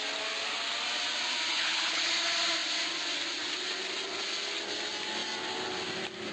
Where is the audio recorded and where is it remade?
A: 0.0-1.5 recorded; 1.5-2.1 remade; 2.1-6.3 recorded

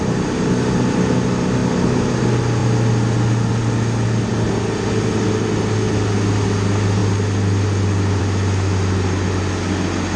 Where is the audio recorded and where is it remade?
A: 0.0-10.2 recorded

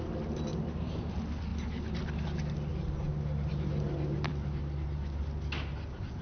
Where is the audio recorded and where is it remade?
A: 0.0-0.5 recorded; 0.5-1.1 remade; 1.1-1.5 recorded; 1.5-2.0 remade; 2.0-6.2 recorded

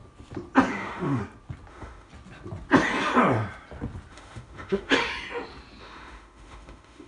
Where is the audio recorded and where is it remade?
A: 0.0-0.7 recorded; 0.7-1.2 remade; 1.2-1.7 recorded; 1.7-2.1 remade; 2.1-4.1 recorded; 4.1-5.1 remade; 5.1-5.8 recorded; 5.8-7.1 remade

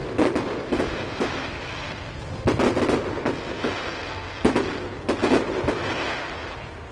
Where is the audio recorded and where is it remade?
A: 0.0-2.2 remade; 2.2-6.9 recorded

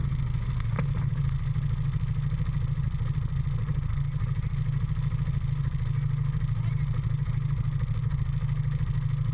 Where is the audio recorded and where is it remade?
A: 0.0-3.9 recorded; 3.9-4.5 remade; 4.5-9.3 recorded

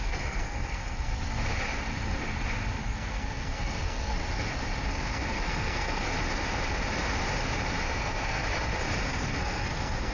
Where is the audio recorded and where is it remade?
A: 0.0-1.1 remade; 1.1-2.8 recorded; 2.8-4.2 remade; 4.2-4.9 recorded; 4.9-6.1 remade; 6.1-7.9 recorded; 7.9-8.4 remade; 8.4-9.1 recorded; 9.1-10.1 remade